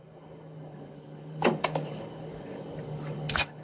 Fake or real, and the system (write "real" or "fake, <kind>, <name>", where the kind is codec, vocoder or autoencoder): fake, codec, DAC